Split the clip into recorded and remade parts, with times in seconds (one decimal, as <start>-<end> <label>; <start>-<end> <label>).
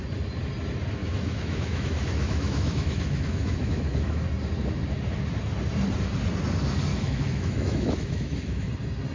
0.0-1.0 recorded; 1.0-4.2 remade; 4.2-6.9 recorded; 6.9-8.7 remade; 8.7-9.1 recorded